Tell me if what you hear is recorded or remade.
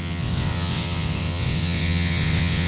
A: remade